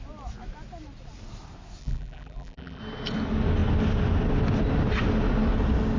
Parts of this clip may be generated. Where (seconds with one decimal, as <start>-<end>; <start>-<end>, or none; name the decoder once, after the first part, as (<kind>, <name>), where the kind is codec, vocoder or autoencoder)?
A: 1.8-2.8 (vocoder, BigVGAN v2)